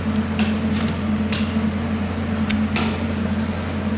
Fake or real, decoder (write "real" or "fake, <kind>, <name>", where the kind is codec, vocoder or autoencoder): real